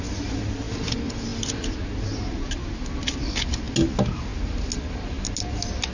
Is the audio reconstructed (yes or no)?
no